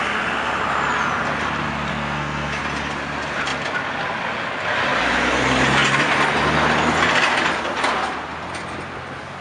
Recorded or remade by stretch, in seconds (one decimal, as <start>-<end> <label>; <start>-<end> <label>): 0.0-1.9 recorded; 1.9-2.6 remade; 2.6-9.4 recorded